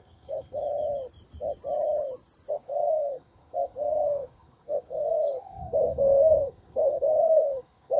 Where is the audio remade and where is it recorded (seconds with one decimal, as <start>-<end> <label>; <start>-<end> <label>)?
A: 0.0-0.6 remade; 0.6-2.5 recorded; 2.5-8.0 remade